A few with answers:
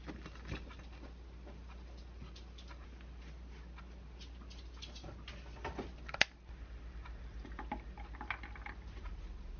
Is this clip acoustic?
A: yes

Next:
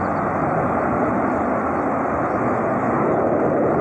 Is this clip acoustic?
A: yes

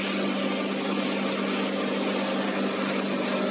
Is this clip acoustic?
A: yes